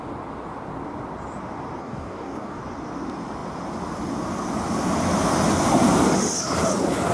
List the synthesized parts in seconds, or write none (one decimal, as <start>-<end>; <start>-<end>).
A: 1.8-2.6